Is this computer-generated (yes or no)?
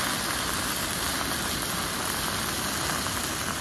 no